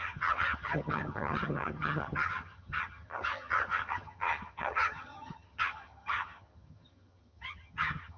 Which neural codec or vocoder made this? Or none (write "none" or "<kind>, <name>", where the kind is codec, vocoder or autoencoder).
vocoder, HiFi-GAN